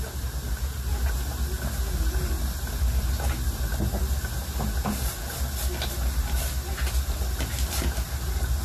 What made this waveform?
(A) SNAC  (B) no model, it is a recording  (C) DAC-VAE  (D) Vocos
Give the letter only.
B